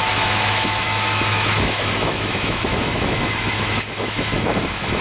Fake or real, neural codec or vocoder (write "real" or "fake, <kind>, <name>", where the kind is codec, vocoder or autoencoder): fake, autoencoder, DAC-VAE